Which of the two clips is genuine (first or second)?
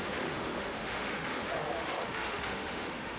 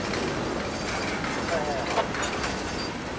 second